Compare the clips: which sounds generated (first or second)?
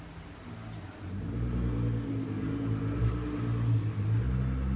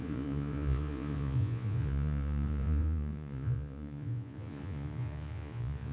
second